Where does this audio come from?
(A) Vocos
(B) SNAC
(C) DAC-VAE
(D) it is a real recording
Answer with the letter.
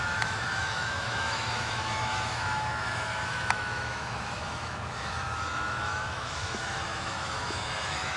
C